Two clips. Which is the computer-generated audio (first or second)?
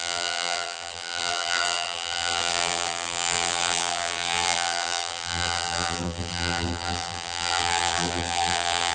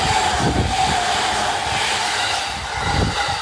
first